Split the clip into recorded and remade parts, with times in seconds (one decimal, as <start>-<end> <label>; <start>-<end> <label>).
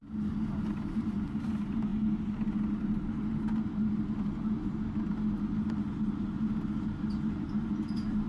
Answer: 0.0-8.3 recorded